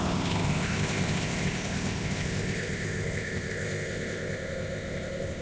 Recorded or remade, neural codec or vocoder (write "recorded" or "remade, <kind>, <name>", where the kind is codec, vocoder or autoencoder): remade, codec, ZipCodec